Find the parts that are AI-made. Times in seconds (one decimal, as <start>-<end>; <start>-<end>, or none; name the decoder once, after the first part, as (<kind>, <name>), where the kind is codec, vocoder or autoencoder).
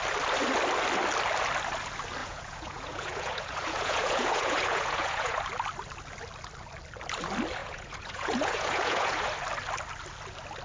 2.2-5.4 (vocoder, Vocos); 7.6-9.3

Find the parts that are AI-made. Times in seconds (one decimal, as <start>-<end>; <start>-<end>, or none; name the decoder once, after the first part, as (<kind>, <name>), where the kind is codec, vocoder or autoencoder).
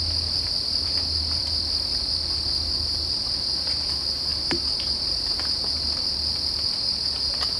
none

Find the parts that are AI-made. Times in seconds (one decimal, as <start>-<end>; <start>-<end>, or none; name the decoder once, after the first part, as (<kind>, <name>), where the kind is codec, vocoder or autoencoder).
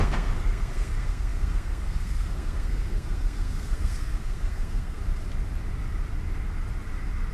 0.0-5.0 (codec, SNAC)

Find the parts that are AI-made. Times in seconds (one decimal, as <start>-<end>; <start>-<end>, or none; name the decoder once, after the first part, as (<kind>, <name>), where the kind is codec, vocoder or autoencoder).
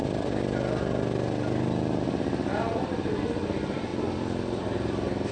none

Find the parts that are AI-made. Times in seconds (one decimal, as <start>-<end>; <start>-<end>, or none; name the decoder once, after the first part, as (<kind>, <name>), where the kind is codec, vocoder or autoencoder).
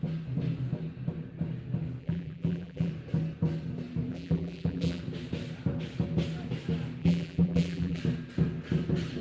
2.0-2.9 (vocoder, BigVGAN v2); 4.1-5.0; 7.0-8.0